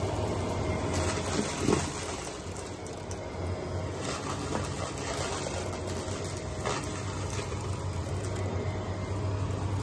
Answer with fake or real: real